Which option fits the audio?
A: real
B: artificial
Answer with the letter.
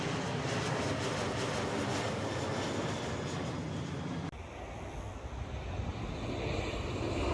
A